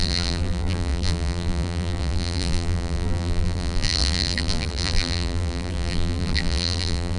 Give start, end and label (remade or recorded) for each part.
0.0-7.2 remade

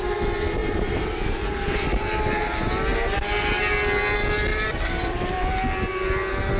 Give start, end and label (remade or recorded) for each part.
0.0-0.6 recorded; 0.6-3.6 remade; 3.6-4.5 recorded; 4.5-5.5 remade; 5.5-6.6 recorded

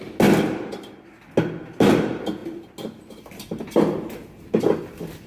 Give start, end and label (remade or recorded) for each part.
0.0-5.3 recorded

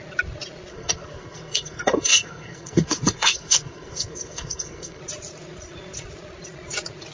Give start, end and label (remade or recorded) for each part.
0.0-0.7 recorded; 0.7-5.0 remade; 5.0-7.1 recorded

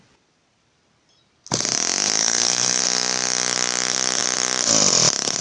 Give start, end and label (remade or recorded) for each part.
0.0-2.2 recorded; 2.2-2.8 remade; 2.8-5.4 recorded

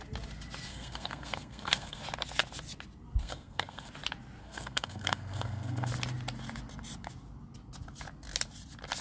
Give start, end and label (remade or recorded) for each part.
0.0-0.7 recorded; 0.7-2.0 remade; 2.0-3.2 recorded; 3.2-3.9 remade; 3.9-4.4 recorded; 4.4-5.9 remade; 5.9-9.0 recorded

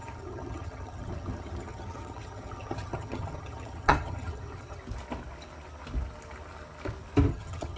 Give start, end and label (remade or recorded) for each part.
0.0-4.8 remade; 4.8-7.3 recorded; 7.3-7.8 remade

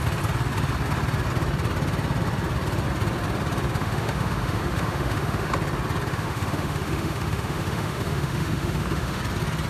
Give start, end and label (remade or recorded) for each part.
0.0-3.8 recorded; 3.8-5.5 remade; 5.5-6.1 recorded; 6.1-9.2 remade; 9.2-9.7 recorded